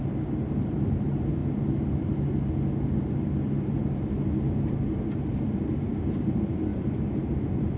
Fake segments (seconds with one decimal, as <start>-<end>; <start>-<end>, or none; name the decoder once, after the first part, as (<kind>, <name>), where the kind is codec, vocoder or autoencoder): 0.0-1.4 (vocoder, BigVGAN v2); 5.9-7.8